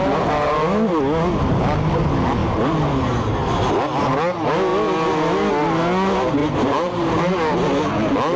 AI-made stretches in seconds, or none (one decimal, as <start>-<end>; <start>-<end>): 6.4-7.2